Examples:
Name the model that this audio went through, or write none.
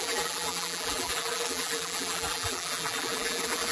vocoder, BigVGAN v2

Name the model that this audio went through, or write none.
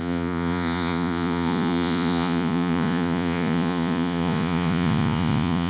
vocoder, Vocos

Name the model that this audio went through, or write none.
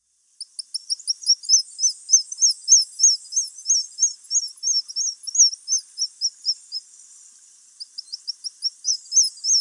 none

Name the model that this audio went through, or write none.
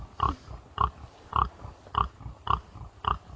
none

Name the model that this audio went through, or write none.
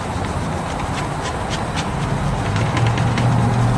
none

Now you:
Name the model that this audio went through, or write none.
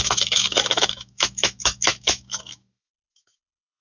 autoencoder, DAC-VAE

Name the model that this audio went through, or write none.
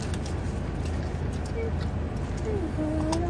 none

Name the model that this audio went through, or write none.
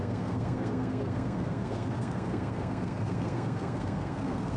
codec, SNAC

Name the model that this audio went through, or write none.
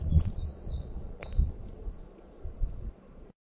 vocoder, Vocos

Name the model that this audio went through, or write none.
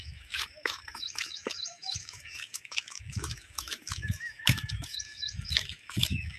autoencoder, DAC-VAE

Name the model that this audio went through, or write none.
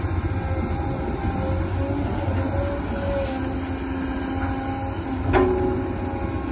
none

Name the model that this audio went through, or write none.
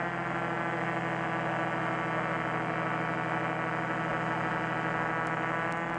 none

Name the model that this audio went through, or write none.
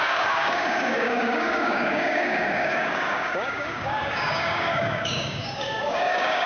codec, DAC